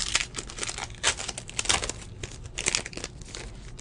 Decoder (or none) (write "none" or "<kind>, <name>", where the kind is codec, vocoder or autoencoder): none